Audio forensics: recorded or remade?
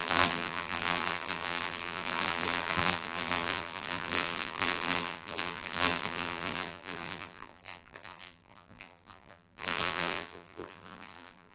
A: remade